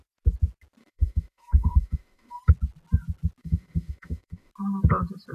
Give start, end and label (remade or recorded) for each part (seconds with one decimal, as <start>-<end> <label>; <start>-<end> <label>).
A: 0.0-0.8 recorded; 0.8-2.4 remade; 2.4-3.4 recorded; 3.4-4.5 remade; 4.5-5.3 recorded

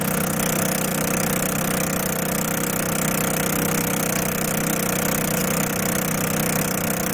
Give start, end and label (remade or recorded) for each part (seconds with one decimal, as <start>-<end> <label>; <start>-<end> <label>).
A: 0.0-7.1 recorded